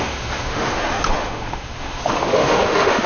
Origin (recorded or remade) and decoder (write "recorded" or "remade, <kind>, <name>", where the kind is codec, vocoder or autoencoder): remade, autoencoder, DAC-VAE